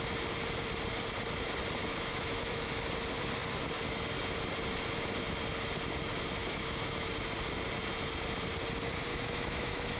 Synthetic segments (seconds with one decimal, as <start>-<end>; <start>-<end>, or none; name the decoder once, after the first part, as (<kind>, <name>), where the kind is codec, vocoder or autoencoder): 1.8-2.7 (autoencoder, DAC-VAE); 6.4-7.1; 9.1-10.0